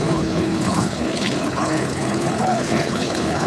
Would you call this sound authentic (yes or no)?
no